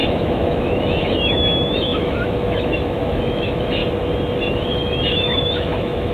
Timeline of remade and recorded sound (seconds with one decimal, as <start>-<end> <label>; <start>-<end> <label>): 0.0-3.8 remade; 3.8-4.5 recorded; 4.5-6.1 remade